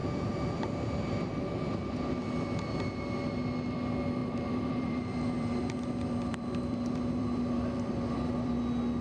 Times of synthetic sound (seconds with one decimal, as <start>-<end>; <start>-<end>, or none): 4.2-8.6